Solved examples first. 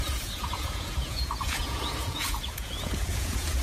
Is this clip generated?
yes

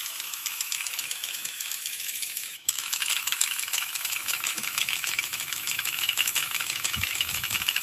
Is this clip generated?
yes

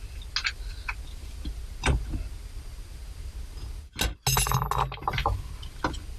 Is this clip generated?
no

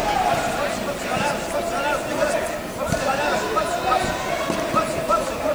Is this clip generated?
no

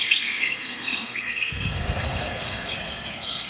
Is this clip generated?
yes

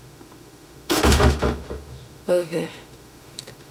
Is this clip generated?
yes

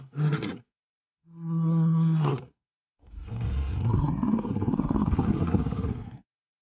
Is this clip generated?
yes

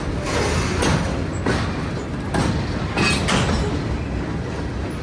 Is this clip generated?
no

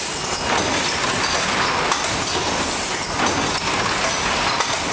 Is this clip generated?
no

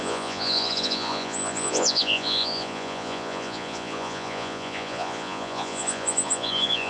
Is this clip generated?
yes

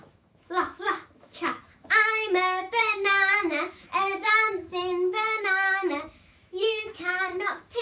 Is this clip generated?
yes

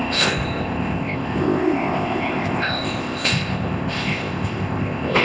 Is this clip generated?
yes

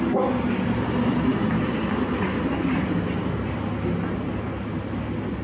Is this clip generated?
no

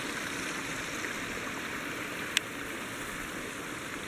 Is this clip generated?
no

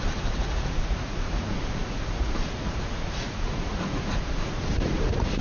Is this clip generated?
yes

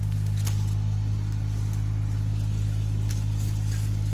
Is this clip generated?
no